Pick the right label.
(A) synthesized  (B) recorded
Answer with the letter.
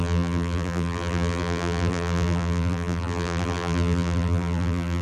A